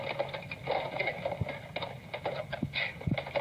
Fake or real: real